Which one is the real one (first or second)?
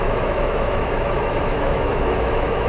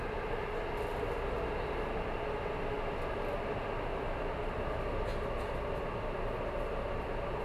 second